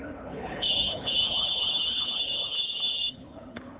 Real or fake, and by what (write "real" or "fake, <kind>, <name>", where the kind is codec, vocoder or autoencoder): fake, codec, HILCodec